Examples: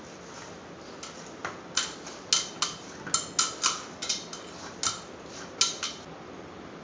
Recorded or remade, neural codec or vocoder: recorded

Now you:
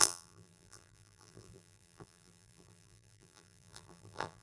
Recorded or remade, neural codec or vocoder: remade, vocoder, BigVGAN v2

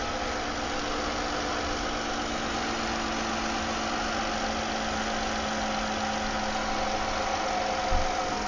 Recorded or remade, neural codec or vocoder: recorded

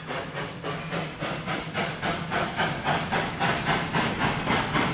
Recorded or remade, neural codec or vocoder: recorded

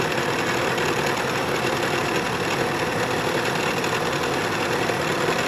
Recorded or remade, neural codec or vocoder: recorded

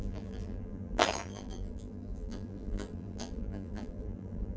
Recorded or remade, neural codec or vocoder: remade, vocoder, BigVGAN v2